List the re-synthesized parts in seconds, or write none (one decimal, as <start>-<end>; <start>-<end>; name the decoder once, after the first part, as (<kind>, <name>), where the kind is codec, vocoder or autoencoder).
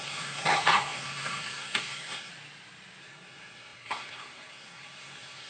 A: 0.0-2.3 (codec, SNAC); 3.0-5.5